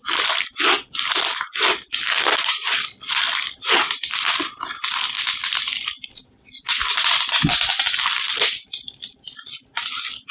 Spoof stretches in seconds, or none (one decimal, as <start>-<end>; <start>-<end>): none